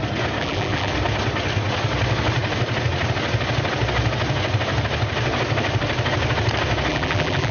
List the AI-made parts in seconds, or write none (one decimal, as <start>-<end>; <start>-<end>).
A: 0.4-0.9; 6.9-7.5